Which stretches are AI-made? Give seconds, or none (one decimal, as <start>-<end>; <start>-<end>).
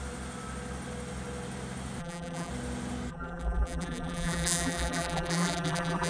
2.0-2.5; 3.1-6.1